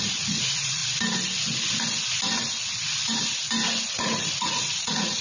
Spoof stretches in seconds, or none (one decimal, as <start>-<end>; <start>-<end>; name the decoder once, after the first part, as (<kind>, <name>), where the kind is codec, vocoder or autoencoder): 0.0-0.8 (vocoder, Vocos); 3.9-5.2